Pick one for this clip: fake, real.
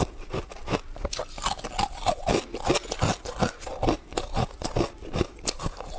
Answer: real